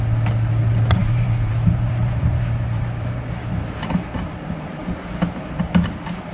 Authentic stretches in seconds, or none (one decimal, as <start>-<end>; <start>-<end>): 0.0-1.0; 4.8-6.3